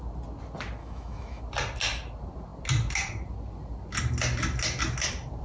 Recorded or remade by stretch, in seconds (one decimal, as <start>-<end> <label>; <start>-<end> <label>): 0.0-0.8 recorded; 0.8-1.4 remade; 1.4-5.4 recorded